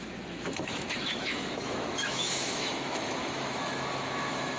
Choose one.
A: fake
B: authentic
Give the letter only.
A